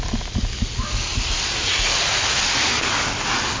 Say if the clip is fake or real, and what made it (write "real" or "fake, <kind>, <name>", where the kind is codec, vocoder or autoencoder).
real